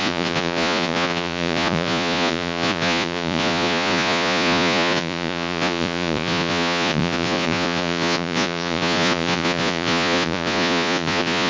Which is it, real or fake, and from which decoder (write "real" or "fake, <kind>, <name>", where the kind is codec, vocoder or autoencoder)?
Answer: fake, vocoder, Vocos